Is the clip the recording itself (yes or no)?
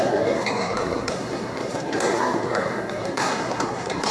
no